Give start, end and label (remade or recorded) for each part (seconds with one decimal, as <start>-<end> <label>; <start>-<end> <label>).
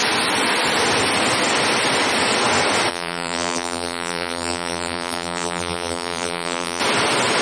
0.0-2.9 recorded; 2.9-6.8 remade; 6.8-7.4 recorded